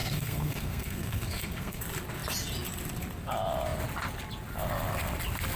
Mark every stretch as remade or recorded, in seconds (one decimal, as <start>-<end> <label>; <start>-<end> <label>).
0.0-1.8 remade; 1.8-5.6 recorded